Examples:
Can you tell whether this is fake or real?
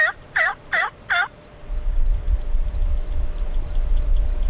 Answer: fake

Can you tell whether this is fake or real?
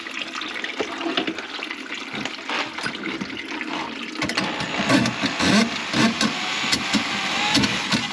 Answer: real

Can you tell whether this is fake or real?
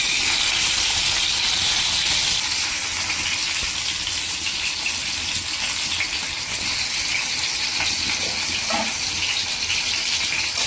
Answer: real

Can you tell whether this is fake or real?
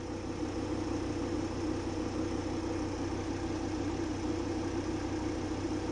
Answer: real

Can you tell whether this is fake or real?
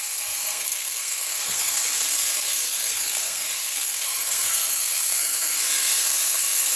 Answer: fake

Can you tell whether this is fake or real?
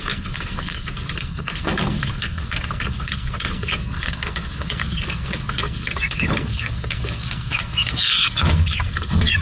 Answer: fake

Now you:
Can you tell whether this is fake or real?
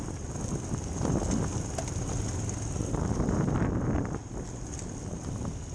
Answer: real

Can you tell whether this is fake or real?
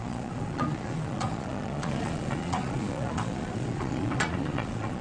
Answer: fake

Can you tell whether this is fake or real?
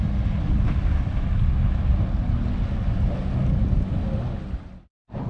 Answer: real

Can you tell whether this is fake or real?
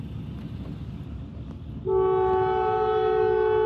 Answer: real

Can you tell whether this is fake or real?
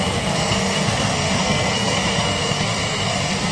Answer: fake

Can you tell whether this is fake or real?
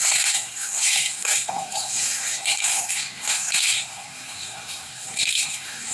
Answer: fake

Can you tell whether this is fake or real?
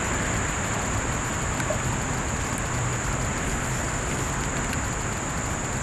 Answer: real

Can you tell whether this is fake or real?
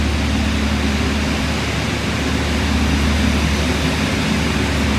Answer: real